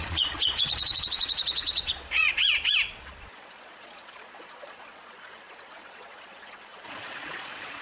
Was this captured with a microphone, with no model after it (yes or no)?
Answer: no